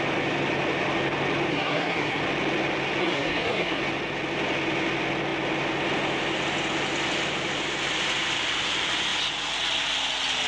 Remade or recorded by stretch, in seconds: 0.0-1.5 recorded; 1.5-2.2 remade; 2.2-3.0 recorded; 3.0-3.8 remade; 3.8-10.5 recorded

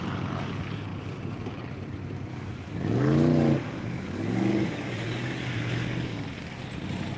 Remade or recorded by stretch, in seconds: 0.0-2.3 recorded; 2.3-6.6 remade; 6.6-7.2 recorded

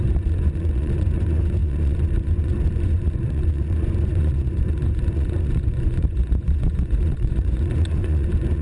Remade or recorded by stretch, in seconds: 0.0-8.6 remade